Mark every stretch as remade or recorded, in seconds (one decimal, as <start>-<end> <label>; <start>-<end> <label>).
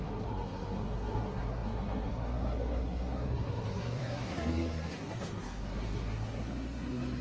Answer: 0.0-7.2 remade